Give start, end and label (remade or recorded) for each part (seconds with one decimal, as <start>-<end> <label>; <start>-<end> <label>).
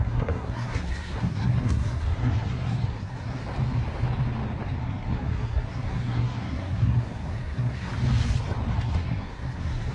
0.0-3.4 remade; 3.4-4.8 recorded; 4.8-7.9 remade; 7.9-8.7 recorded; 8.7-9.9 remade